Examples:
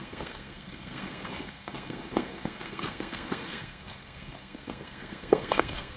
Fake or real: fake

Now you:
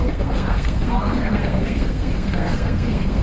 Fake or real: fake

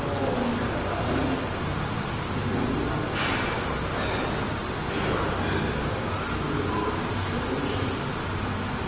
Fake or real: real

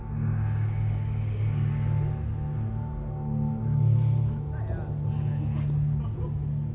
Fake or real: real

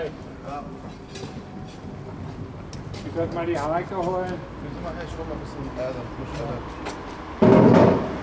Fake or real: real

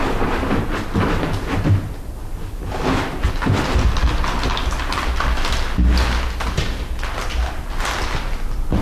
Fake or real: real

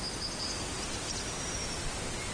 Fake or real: real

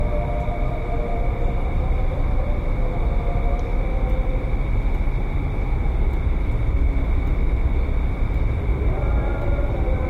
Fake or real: real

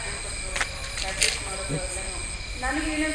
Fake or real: real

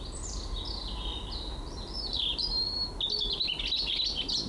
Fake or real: real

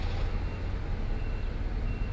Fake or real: real